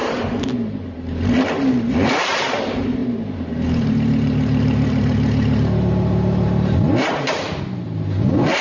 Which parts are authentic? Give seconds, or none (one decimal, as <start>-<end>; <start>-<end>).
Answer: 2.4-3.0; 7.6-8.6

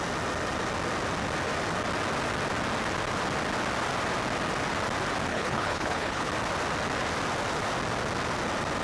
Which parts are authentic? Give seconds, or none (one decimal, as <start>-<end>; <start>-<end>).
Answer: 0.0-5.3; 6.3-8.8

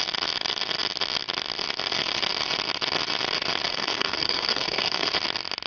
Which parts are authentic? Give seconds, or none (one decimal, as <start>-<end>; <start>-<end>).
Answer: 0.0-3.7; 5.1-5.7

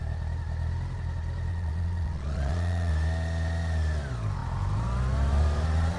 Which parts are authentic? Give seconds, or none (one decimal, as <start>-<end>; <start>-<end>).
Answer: 0.0-1.5; 2.9-6.0

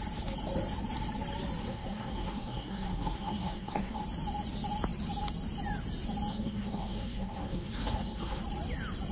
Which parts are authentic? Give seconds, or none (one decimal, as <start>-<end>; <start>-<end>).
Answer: 0.0-1.6; 4.0-6.3; 8.4-9.1

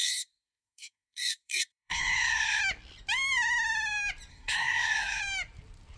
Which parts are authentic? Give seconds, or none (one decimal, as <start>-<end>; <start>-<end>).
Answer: 2.6-4.3; 5.2-6.0